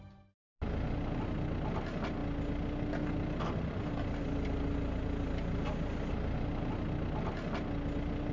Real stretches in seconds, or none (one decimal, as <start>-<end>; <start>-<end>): 0.0-8.3